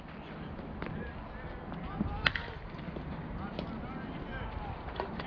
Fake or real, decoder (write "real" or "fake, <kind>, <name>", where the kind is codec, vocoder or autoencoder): real